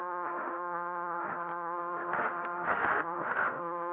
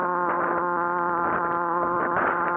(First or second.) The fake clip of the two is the first